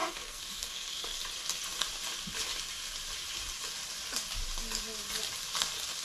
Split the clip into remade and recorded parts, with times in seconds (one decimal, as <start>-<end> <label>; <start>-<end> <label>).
0.0-1.2 remade; 1.2-6.0 recorded